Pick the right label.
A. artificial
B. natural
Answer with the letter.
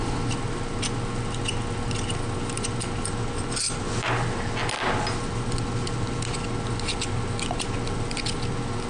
B